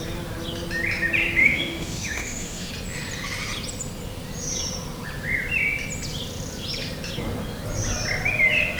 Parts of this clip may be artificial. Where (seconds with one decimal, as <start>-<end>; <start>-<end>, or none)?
1.4-2.7